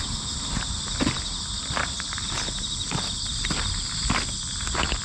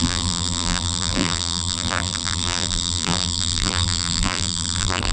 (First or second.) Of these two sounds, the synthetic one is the second